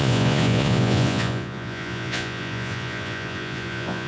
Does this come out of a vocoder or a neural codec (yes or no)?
yes